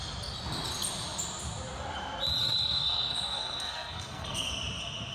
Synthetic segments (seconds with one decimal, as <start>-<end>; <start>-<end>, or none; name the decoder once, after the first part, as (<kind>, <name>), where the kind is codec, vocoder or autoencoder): 2.4-4.5 (codec, SNAC)